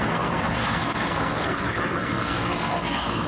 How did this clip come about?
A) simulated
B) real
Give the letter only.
A